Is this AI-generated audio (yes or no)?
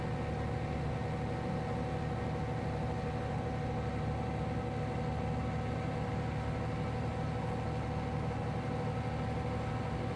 no